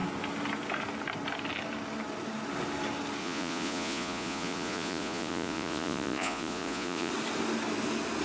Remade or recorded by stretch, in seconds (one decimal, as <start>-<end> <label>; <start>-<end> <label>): 0.0-3.2 recorded; 3.2-7.1 remade; 7.1-8.2 recorded